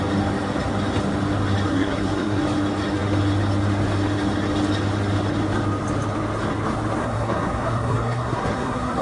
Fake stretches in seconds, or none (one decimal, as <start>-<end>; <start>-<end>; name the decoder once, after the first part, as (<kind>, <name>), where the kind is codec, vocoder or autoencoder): 1.7-2.4 (codec, SNAC); 7.0-9.0